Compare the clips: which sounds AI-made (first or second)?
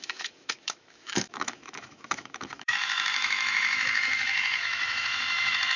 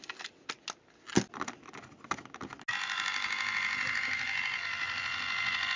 first